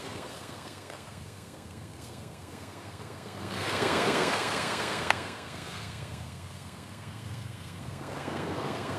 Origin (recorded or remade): remade